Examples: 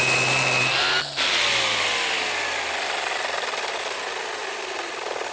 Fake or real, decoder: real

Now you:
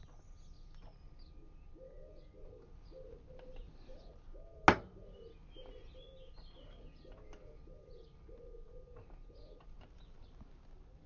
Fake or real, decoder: real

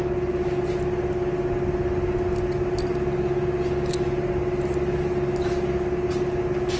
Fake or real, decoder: real